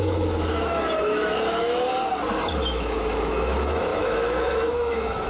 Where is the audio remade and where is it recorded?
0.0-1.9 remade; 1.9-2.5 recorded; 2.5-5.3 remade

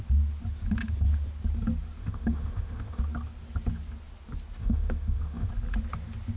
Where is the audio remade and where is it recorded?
0.0-2.0 recorded; 2.0-3.0 remade; 3.0-4.6 recorded; 4.6-5.5 remade; 5.5-6.4 recorded